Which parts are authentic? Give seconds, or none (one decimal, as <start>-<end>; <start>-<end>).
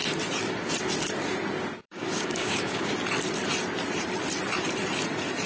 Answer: 0.0-1.8; 2.9-5.5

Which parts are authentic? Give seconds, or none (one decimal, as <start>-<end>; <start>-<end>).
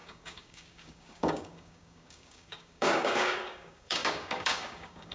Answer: none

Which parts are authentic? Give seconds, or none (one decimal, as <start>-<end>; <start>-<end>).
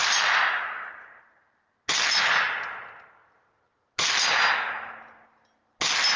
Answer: 0.0-6.2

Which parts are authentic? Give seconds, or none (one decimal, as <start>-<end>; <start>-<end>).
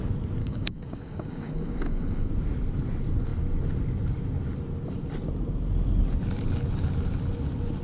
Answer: 0.0-0.4; 2.3-7.8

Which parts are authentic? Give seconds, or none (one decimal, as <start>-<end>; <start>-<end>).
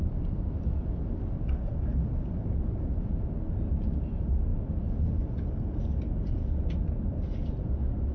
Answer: 0.0-8.1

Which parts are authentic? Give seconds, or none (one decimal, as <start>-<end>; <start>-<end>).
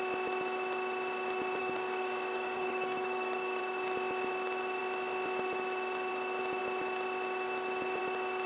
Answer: 0.0-1.6; 3.6-8.5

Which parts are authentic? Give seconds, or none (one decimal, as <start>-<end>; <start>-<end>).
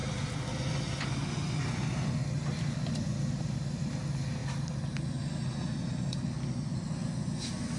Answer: 0.0-7.8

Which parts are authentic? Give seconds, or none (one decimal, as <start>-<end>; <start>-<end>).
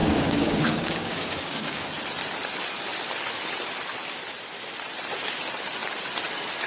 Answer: 1.8-6.7